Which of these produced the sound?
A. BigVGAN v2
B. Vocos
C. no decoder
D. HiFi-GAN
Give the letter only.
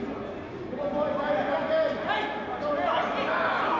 C